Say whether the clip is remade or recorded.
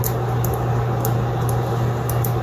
recorded